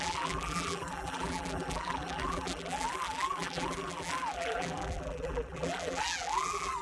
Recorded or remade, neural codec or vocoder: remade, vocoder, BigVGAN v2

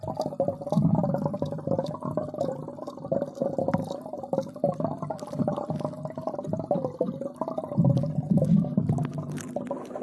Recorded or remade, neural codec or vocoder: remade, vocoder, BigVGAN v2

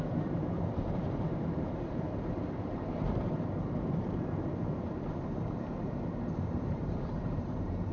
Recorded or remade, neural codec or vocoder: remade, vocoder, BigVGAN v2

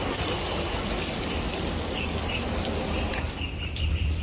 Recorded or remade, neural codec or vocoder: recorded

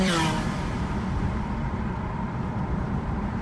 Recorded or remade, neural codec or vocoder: remade, vocoder, BigVGAN v2